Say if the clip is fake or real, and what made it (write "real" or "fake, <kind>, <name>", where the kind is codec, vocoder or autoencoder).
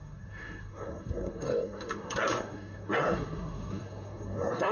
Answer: fake, codec, SNAC